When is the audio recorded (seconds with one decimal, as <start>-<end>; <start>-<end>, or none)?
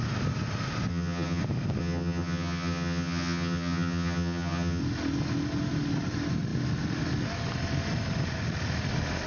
0.0-0.9; 1.4-1.8; 4.8-9.3